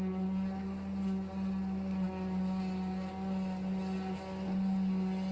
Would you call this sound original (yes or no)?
yes